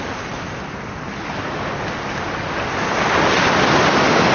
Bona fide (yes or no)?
yes